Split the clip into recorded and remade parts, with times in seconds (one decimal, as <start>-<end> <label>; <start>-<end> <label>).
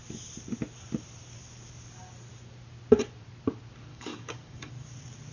0.0-3.9 recorded; 3.9-4.7 remade; 4.7-5.3 recorded